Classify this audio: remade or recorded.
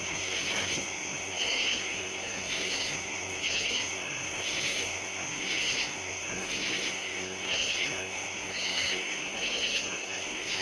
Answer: remade